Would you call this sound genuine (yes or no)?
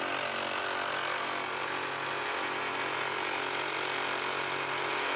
yes